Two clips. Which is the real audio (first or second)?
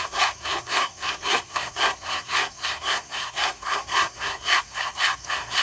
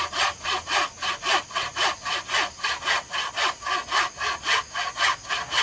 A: second